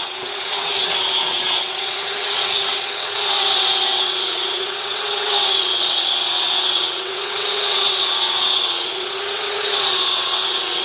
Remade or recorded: remade